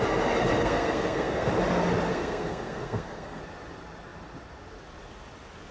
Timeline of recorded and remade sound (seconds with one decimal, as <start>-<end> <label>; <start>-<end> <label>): 0.0-0.6 recorded; 0.6-1.5 remade; 1.5-2.1 recorded; 2.1-3.4 remade; 3.4-5.7 recorded